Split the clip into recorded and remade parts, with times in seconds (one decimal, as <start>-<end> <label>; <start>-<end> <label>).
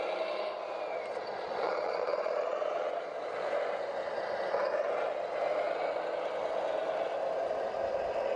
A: 0.0-1.1 recorded; 1.1-3.0 remade; 3.0-8.4 recorded